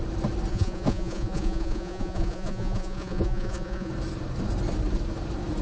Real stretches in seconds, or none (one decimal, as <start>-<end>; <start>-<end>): 0.0-0.5; 3.9-5.6